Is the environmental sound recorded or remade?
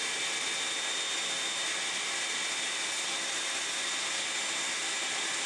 recorded